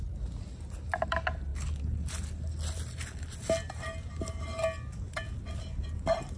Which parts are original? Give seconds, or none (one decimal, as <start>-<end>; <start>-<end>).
0.0-6.4